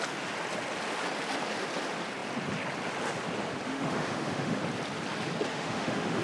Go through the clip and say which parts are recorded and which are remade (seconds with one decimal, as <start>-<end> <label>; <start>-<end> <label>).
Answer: 0.0-3.7 recorded; 3.7-4.6 remade; 4.6-5.5 recorded; 5.5-6.2 remade